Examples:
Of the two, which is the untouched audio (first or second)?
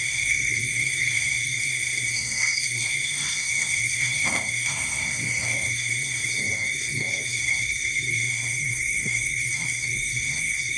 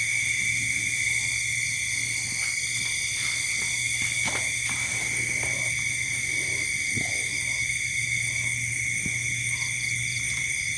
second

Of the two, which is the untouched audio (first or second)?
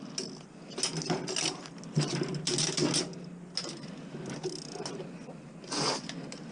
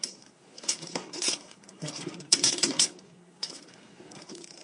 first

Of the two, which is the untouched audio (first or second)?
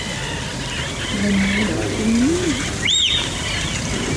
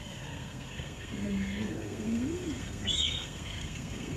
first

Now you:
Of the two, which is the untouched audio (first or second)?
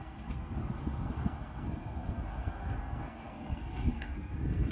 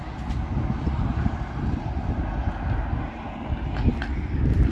second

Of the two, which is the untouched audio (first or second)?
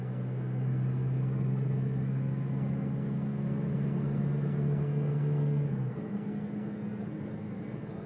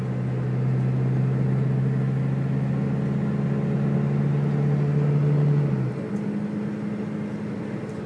second